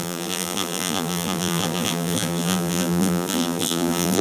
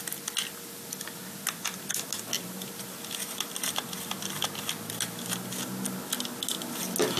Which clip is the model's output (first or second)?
first